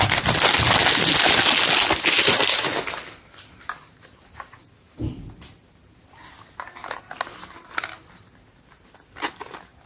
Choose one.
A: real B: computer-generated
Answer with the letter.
A